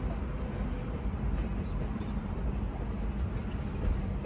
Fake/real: real